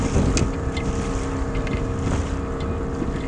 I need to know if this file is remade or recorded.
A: recorded